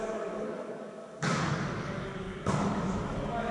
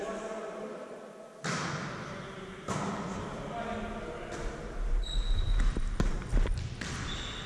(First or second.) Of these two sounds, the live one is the second